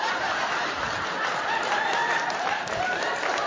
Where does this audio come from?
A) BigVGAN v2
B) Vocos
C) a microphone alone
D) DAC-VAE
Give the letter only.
A